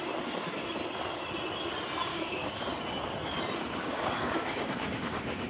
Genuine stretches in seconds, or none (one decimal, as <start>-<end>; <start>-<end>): 0.0-2.1; 2.6-3.8

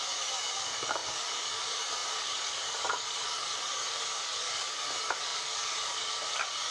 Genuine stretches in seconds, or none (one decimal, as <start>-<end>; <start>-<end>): none